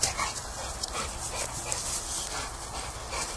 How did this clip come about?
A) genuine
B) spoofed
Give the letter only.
A